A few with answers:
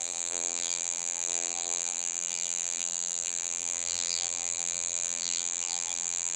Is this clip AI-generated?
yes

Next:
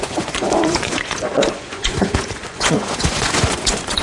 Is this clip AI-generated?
yes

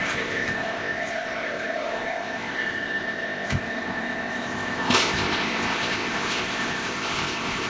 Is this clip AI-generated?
yes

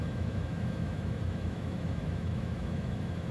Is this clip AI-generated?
yes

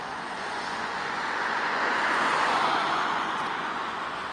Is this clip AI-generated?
yes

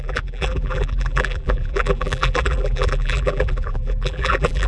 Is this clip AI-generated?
yes